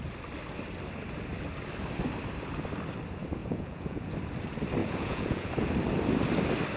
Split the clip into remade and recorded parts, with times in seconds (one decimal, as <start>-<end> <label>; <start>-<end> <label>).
0.0-3.4 recorded; 3.4-4.1 remade; 4.1-4.8 recorded; 4.8-5.5 remade; 5.5-6.8 recorded